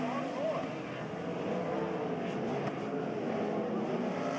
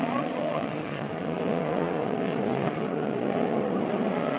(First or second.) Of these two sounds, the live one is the first